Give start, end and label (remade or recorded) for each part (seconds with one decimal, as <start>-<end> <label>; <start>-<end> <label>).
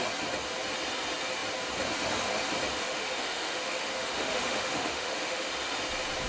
0.0-2.8 recorded; 2.8-5.5 remade; 5.5-6.3 recorded